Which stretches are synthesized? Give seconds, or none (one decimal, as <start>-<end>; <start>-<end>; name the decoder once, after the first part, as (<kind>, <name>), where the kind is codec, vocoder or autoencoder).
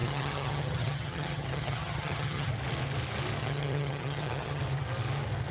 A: 0.0-2.5 (vocoder, HiFi-GAN); 3.4-4.6